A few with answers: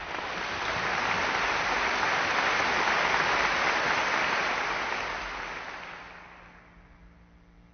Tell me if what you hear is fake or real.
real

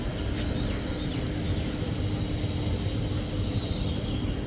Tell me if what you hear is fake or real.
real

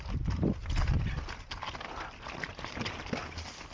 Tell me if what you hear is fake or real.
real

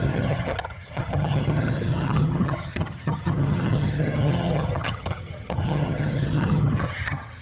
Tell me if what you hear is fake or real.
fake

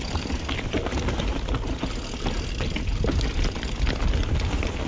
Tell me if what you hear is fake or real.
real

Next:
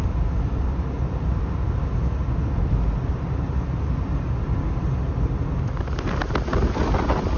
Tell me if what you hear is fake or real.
real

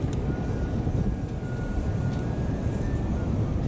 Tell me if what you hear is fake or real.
real